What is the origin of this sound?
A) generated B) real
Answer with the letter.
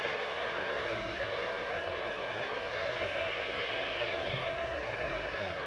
A